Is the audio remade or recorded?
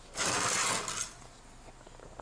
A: recorded